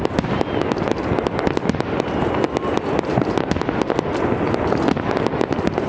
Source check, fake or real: real